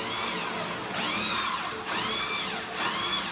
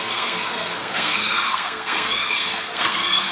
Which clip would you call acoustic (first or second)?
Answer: first